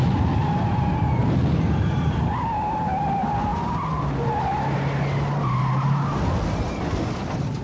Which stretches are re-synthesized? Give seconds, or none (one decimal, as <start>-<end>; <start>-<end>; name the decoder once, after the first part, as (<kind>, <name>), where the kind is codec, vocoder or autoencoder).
none